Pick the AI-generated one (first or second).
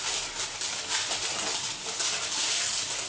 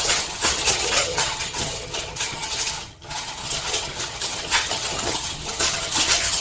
second